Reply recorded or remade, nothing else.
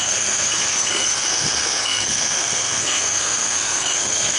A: remade